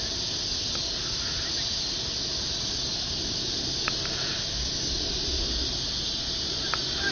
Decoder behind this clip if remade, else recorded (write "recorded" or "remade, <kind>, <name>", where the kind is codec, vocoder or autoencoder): recorded